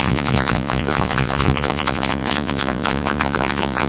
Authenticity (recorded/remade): remade